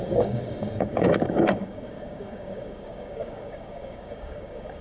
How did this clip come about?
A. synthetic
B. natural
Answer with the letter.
A